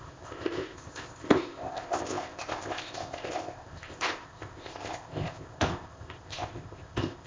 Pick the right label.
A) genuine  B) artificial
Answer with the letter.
B